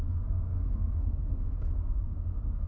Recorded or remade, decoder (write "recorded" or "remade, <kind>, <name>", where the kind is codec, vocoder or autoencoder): remade, codec, SNAC